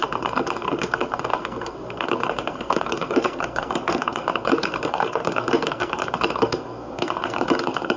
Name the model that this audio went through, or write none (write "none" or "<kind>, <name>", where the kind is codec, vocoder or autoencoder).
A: codec, SNAC